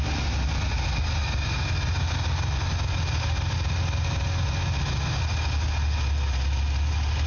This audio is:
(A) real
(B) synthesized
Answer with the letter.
A